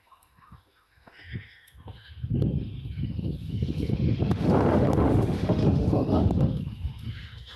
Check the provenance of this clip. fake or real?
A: fake